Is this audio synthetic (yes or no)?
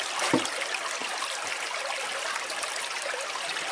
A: no